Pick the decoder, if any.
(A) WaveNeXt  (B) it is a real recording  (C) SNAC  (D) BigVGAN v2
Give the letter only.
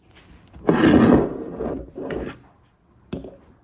B